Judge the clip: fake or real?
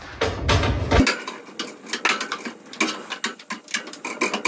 real